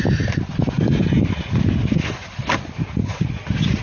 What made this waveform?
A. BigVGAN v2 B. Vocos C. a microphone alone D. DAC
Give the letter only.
C